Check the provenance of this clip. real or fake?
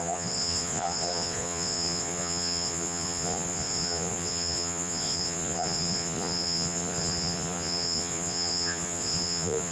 fake